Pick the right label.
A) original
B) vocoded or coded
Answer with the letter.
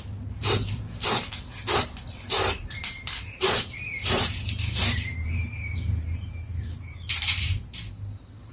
B